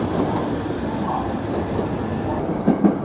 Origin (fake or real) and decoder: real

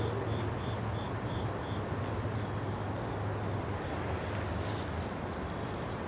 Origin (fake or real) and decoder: real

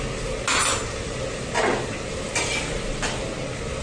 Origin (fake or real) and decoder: real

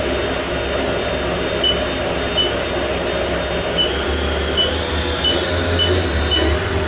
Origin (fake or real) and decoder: real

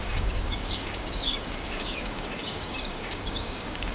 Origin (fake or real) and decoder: fake, codec, DAC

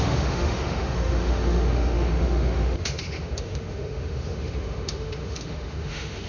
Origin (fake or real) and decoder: fake, autoencoder, DAC-VAE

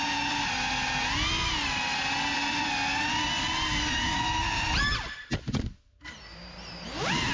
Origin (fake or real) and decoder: real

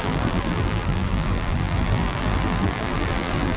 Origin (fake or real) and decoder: fake, vocoder, BigVGAN v2